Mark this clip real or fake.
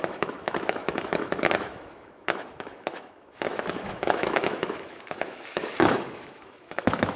fake